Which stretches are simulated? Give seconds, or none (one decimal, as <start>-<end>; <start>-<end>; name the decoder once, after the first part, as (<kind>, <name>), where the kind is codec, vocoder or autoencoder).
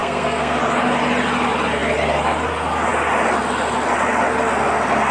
0.0-0.6 (codec, SNAC)